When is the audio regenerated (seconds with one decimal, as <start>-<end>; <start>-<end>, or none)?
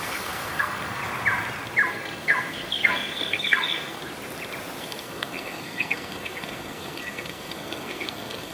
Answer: 0.0-1.0; 1.9-4.0; 4.8-8.5